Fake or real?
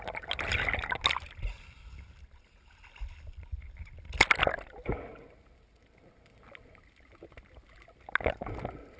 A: real